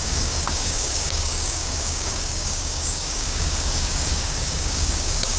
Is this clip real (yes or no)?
no